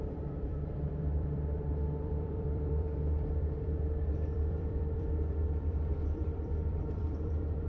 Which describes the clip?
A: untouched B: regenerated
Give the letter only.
B